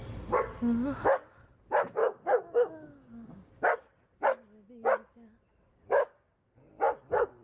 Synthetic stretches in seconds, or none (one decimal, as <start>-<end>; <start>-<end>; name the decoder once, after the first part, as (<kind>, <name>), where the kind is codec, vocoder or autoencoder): 2.0-3.5 (codec, DAC); 5.7-6.5